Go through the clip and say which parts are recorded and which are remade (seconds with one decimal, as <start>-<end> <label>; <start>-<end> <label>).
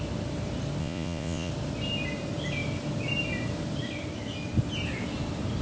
0.0-0.8 recorded; 0.8-1.5 remade; 1.5-5.6 recorded